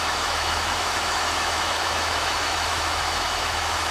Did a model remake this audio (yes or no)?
yes